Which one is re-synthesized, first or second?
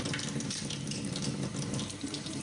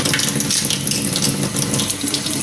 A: first